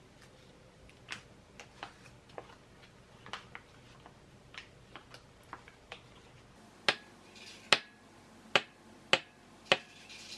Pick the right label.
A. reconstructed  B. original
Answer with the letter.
B